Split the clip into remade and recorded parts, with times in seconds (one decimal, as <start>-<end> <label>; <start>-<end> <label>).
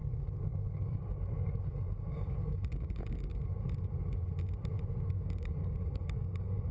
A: 0.0-3.3 remade; 3.3-5.1 recorded; 5.1-6.7 remade